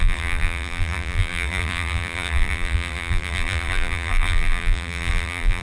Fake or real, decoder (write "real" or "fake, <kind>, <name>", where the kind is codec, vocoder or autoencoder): fake, vocoder, BigVGAN v2